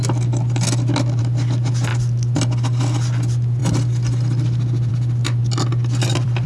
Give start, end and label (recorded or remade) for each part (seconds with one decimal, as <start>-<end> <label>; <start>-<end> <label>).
0.0-1.2 recorded; 1.2-3.6 remade; 3.6-4.9 recorded; 4.9-5.4 remade; 5.4-6.0 recorded; 6.0-6.5 remade